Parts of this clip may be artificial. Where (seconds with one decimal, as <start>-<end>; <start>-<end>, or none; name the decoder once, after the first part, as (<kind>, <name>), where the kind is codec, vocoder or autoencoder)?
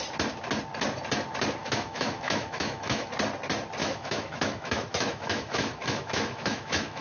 1.6-3.1 (autoencoder, DAC-VAE); 3.8-7.0